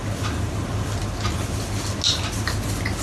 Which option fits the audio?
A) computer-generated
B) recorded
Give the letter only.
B